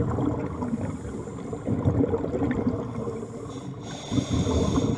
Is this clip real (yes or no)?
yes